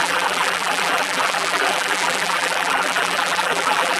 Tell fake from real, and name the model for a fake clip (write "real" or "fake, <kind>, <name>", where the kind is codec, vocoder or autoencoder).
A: fake, vocoder, BigVGAN v2